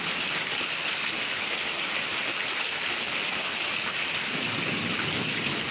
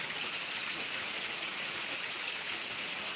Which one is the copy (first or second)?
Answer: second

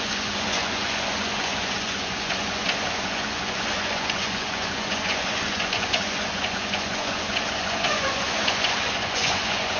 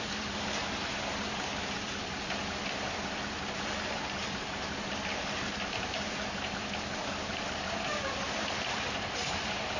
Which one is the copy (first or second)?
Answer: first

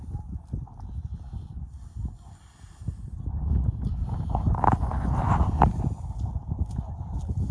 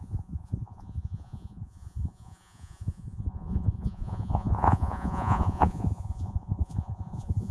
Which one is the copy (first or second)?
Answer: second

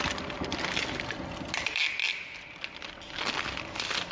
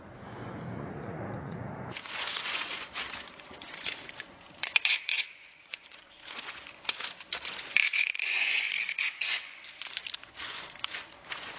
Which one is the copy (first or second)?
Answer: second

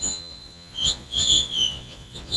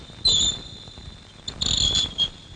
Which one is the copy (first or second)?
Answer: first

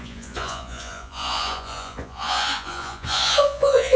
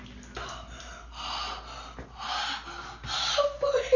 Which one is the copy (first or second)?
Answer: first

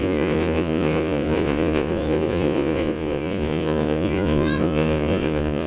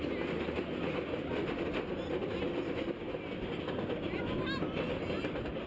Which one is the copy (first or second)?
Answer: first